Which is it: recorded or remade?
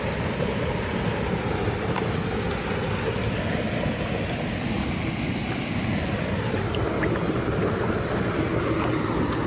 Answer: recorded